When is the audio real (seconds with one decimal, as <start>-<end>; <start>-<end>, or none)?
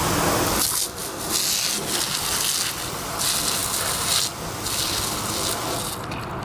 0.0-6.4